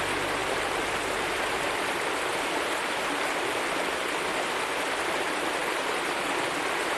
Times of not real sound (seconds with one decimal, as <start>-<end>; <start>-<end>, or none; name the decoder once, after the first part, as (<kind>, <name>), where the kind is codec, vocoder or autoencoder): 0.4-1.4 (vocoder, BigVGAN v2); 2.3-3.4